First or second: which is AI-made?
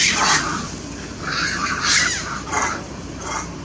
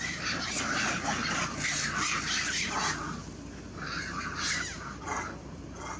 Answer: first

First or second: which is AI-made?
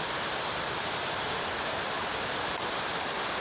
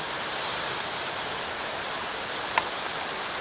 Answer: first